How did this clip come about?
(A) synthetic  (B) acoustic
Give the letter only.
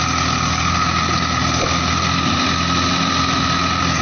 B